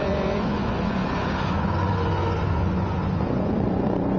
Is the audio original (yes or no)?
no